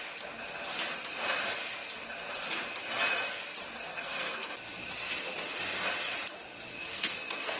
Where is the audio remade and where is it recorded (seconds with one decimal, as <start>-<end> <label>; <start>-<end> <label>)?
0.0-3.9 recorded; 3.9-4.5 remade; 4.5-6.7 recorded; 6.7-7.6 remade